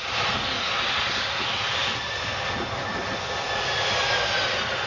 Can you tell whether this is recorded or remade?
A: recorded